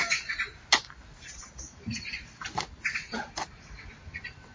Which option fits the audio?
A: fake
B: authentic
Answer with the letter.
B